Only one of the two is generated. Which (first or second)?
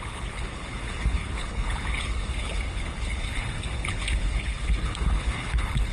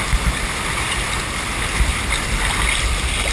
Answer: first